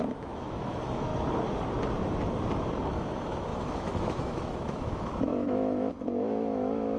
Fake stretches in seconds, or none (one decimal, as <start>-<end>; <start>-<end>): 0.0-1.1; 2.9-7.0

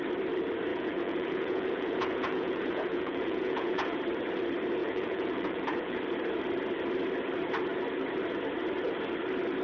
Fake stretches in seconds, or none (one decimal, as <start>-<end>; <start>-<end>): 0.7-4.0; 4.8-6.0

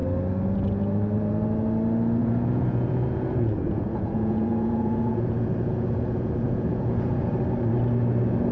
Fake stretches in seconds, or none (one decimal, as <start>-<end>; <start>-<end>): 2.2-7.3

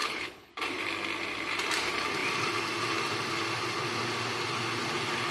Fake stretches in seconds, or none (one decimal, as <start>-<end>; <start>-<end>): 0.0-0.5